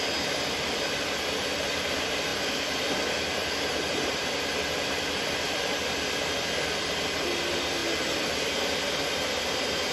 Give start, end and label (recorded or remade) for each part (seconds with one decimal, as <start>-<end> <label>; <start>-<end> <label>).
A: 0.0-7.8 remade; 7.8-9.4 recorded; 9.4-9.9 remade